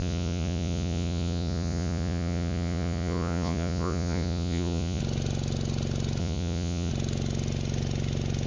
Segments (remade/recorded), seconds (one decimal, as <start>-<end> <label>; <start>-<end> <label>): 0.0-5.0 remade; 5.0-6.2 recorded; 6.2-6.9 remade; 6.9-8.5 recorded